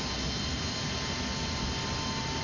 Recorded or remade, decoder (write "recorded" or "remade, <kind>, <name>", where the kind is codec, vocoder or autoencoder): recorded